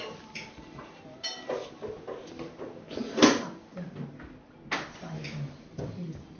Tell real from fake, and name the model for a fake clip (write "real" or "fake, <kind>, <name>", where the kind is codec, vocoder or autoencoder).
real